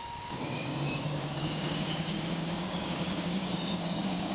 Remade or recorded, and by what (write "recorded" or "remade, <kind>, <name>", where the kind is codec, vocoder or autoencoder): remade, codec, DAC